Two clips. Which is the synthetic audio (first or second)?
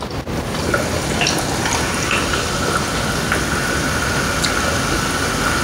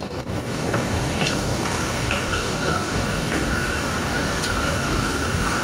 second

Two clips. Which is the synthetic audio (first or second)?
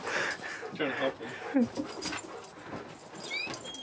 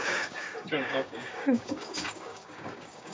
second